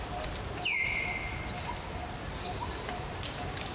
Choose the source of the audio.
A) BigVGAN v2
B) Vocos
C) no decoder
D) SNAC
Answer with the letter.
C